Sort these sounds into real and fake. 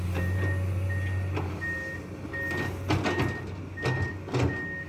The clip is real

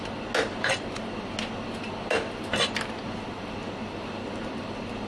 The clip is real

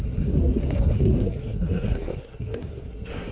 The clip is fake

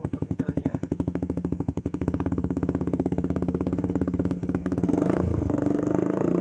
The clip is fake